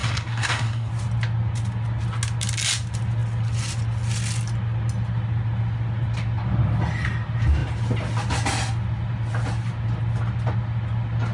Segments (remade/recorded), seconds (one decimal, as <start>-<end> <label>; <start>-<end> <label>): 0.0-0.9 remade; 0.9-11.3 recorded